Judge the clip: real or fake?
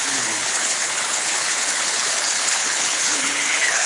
fake